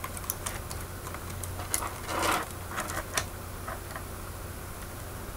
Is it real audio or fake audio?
real